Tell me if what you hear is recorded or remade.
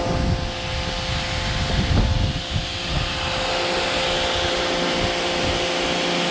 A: recorded